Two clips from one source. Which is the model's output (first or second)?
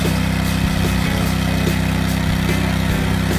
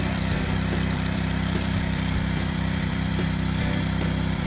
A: second